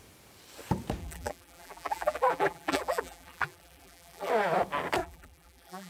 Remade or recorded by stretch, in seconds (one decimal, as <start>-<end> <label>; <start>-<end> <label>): 0.0-1.0 recorded; 1.0-4.3 remade; 4.3-5.0 recorded; 5.0-5.9 remade